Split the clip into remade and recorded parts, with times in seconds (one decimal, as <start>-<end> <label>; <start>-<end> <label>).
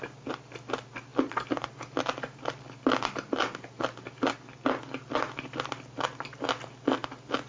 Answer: 0.0-7.5 recorded